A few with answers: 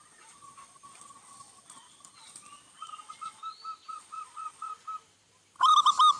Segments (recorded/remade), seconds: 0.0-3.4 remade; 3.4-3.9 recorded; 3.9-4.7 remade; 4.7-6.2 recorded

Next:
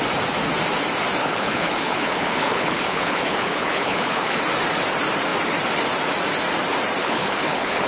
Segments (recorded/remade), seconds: 0.0-1.2 recorded; 1.2-4.4 remade; 4.4-7.0 recorded; 7.0-7.9 remade

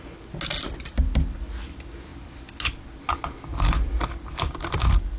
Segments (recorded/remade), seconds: 0.0-5.2 recorded

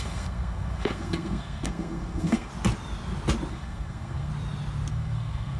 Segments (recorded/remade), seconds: 0.0-2.5 remade; 2.5-3.5 recorded; 3.5-4.3 remade; 4.3-4.9 recorded; 4.9-5.6 remade

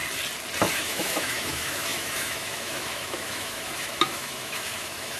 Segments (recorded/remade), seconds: 0.0-0.7 recorded; 0.7-5.2 remade

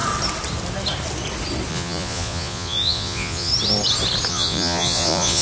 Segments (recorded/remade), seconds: 0.0-1.7 recorded; 1.7-3.5 remade; 3.5-4.3 recorded; 4.3-5.4 remade